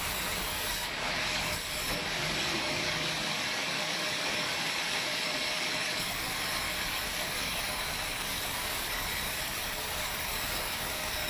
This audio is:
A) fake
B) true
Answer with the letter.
A